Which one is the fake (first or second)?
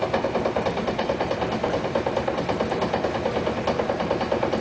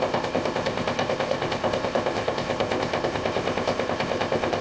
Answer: second